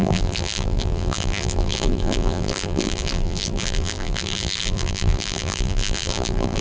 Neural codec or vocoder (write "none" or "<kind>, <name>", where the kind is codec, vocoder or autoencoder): vocoder, BigVGAN v2